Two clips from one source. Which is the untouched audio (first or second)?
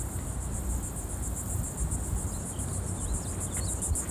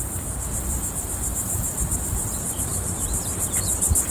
first